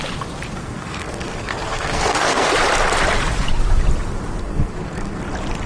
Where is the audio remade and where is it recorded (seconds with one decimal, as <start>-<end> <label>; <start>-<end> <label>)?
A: 0.0-0.6 recorded; 0.6-2.5 remade; 2.5-4.4 recorded; 4.4-5.2 remade; 5.2-5.7 recorded